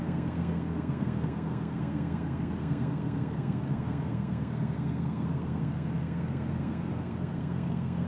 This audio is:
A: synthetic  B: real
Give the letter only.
A